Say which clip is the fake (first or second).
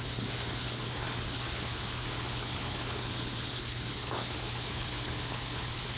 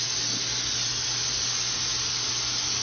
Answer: first